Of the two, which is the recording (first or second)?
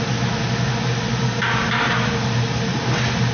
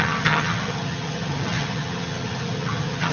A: first